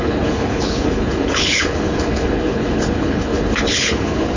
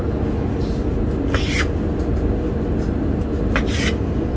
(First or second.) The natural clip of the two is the second